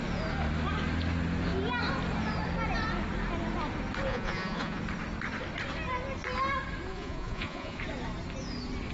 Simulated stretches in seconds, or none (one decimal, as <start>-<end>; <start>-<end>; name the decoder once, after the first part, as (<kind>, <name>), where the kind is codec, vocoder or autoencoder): 4.1-4.8 (vocoder, Vocos); 6.9-7.8